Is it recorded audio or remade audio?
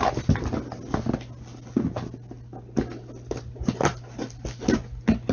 recorded